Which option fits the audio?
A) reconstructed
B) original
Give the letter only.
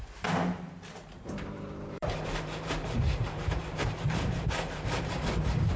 A